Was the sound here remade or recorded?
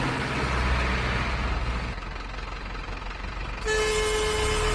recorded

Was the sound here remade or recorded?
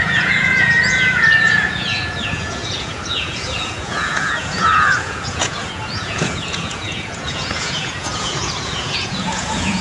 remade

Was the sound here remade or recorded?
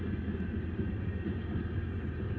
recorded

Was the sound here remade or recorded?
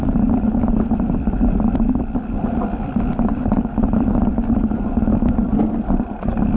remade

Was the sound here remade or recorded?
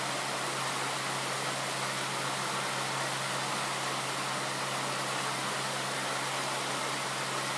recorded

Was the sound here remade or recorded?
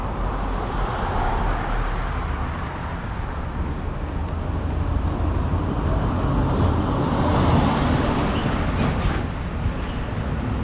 recorded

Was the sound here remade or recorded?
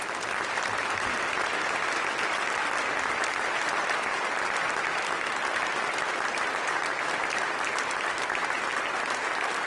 recorded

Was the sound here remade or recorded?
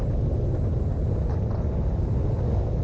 recorded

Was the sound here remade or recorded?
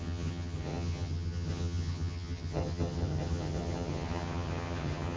remade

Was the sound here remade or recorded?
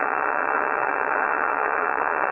remade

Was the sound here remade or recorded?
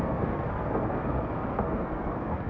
remade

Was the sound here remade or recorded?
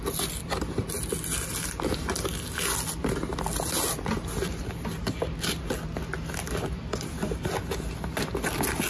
recorded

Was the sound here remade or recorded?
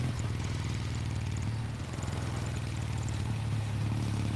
remade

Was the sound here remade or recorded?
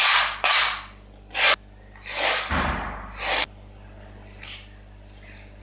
recorded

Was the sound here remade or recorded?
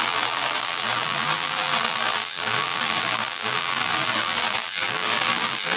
remade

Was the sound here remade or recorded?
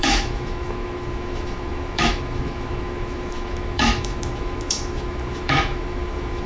remade